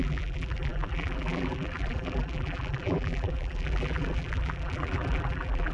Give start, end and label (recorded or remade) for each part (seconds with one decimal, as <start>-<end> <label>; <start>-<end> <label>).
0.0-5.7 remade